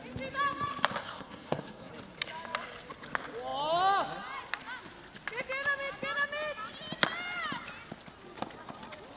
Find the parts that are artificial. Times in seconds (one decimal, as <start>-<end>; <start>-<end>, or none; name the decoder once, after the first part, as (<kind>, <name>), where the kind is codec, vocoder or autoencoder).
1.0-1.9 (codec, SNAC)